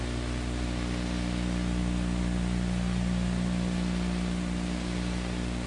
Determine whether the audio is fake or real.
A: real